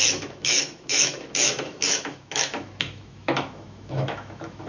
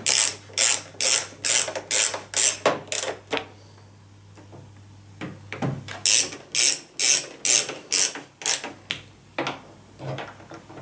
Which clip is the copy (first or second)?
first